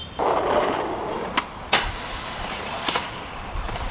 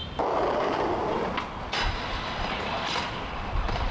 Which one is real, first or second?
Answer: second